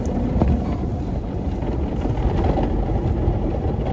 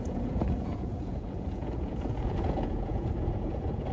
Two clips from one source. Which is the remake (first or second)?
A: second